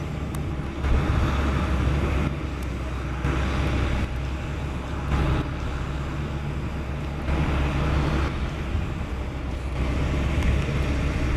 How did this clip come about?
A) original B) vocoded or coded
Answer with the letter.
A